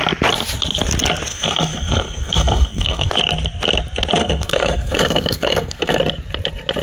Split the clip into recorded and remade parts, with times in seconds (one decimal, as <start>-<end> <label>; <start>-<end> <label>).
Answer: 0.0-1.3 recorded; 1.3-3.1 remade; 3.1-4.2 recorded; 4.2-6.0 remade; 6.0-6.8 recorded